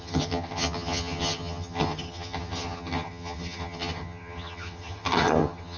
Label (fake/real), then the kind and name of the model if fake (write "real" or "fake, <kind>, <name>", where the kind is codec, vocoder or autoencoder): fake, vocoder, HiFi-GAN